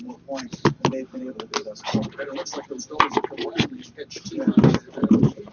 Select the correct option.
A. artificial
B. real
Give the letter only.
B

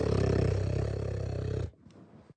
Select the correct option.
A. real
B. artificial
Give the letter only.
A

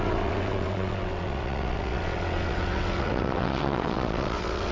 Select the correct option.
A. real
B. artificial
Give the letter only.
B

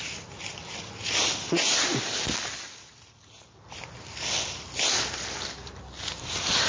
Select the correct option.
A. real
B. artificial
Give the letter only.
A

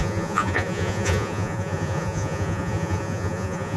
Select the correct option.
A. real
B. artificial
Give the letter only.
B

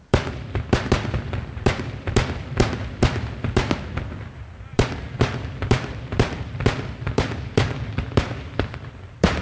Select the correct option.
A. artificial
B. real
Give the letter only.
A